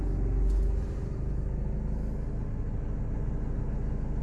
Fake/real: real